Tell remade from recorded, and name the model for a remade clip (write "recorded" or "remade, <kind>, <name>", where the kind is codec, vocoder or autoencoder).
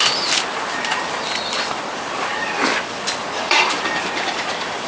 remade, vocoder, BigVGAN v2